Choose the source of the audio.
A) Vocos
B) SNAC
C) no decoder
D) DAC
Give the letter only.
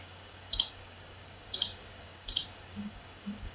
D